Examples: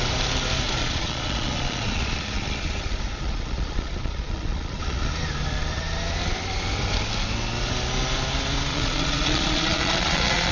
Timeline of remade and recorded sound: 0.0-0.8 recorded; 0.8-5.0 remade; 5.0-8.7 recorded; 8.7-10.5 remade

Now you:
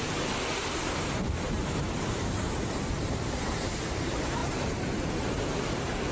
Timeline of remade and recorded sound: 0.0-6.1 remade

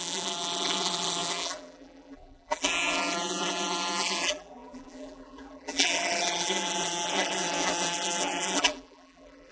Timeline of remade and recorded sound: 0.0-9.5 remade

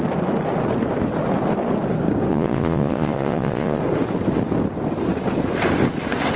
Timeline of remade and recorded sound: 0.0-2.3 recorded; 2.3-3.8 remade; 3.8-6.4 recorded

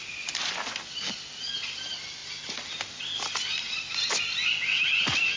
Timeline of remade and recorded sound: 0.0-5.4 recorded